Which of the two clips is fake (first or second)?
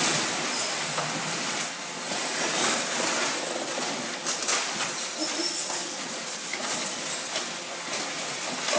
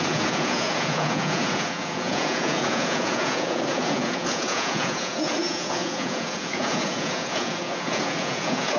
second